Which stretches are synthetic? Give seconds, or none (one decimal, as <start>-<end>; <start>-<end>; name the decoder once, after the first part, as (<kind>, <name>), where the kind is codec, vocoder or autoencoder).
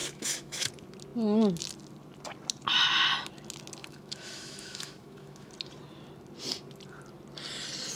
0.0-0.7 (autoencoder, DAC-VAE); 3.8-5.5